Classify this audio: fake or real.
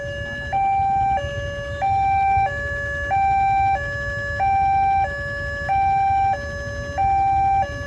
real